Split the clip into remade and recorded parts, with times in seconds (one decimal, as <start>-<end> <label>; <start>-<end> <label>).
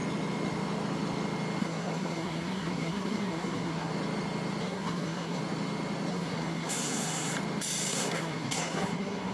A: 0.0-1.6 recorded; 1.6-3.9 remade; 3.9-4.6 recorded; 4.6-5.4 remade; 5.4-6.1 recorded; 6.1-7.3 remade; 7.3-7.9 recorded; 7.9-9.3 remade